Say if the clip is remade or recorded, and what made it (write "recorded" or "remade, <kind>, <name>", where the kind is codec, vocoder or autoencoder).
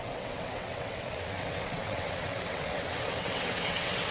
remade, vocoder, WaveNeXt